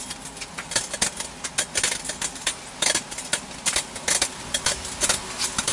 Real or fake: real